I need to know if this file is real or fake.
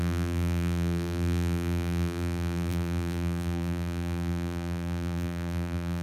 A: fake